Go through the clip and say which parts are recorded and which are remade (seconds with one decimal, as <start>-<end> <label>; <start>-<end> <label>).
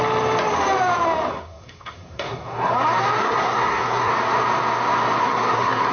0.0-1.3 recorded; 1.3-2.7 remade; 2.7-3.2 recorded; 3.2-4.1 remade; 4.1-5.2 recorded; 5.2-5.9 remade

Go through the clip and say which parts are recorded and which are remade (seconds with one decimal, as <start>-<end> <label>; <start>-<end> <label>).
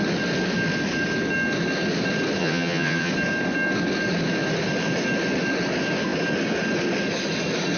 0.0-2.4 recorded; 2.4-3.1 remade; 3.1-7.8 recorded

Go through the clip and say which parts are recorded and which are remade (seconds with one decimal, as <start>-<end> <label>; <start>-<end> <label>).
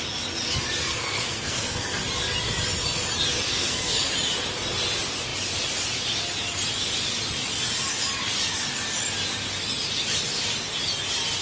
0.0-0.8 recorded; 0.8-2.0 remade; 2.0-3.5 recorded; 3.5-4.1 remade; 4.1-11.4 recorded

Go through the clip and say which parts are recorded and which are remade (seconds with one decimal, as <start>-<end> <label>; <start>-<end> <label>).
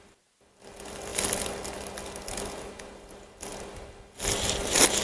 0.0-5.0 recorded